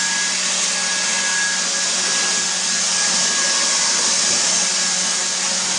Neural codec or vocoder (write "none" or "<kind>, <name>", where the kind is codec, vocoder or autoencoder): none